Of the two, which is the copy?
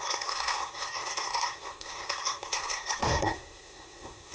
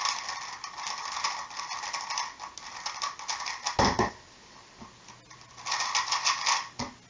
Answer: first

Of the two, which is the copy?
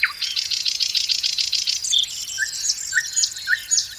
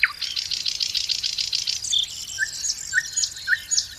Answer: first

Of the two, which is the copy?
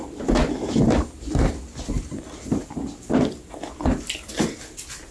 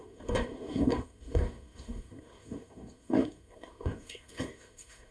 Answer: second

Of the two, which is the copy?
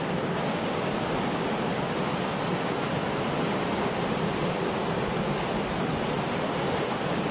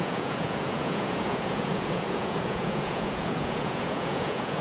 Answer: second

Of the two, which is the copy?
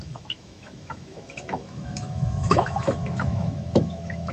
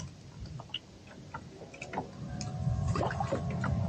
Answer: first